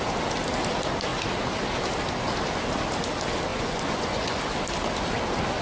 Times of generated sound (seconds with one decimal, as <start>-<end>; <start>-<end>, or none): 3.5-4.4